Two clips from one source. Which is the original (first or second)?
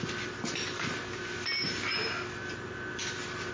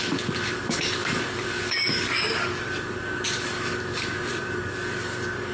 first